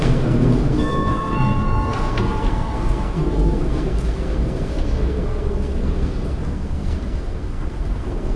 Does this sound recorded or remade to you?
remade